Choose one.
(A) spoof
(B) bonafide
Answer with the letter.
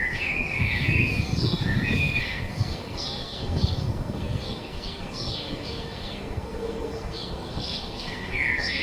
A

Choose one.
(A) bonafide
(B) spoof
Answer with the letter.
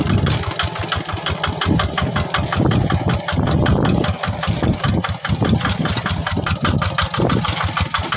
A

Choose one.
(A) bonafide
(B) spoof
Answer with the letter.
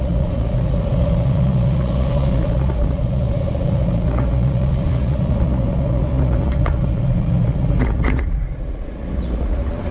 B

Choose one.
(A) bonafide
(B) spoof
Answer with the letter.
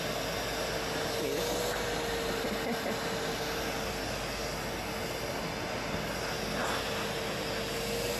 A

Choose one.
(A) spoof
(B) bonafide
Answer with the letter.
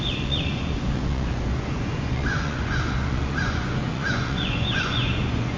A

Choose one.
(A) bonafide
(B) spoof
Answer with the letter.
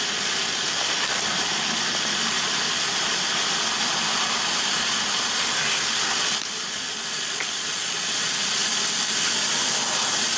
A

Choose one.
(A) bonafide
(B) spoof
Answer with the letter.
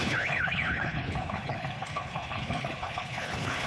B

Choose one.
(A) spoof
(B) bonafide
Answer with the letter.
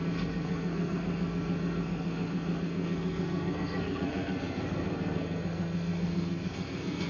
A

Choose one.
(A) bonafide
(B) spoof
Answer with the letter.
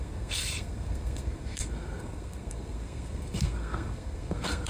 B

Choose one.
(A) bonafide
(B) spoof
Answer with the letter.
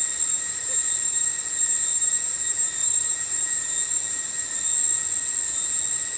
A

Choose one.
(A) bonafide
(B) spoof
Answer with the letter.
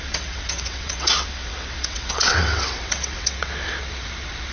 B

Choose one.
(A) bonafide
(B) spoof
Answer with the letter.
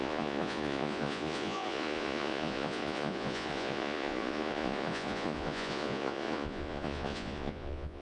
B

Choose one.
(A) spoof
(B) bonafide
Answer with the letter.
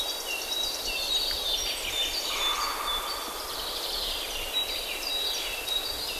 B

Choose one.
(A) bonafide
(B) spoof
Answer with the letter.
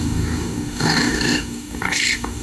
B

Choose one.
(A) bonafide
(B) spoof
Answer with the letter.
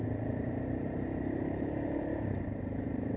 B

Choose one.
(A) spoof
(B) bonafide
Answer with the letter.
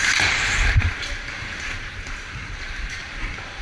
A